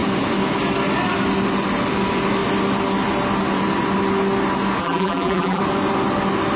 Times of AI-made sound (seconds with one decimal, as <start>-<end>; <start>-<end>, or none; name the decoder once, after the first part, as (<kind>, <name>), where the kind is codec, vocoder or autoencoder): 4.8-5.6 (vocoder, BigVGAN v2)